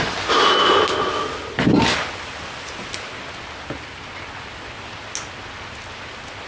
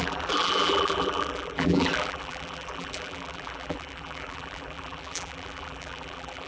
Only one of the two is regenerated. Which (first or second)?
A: second